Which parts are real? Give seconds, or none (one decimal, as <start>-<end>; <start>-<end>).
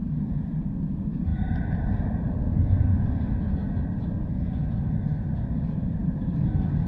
0.0-0.8; 2.9-4.9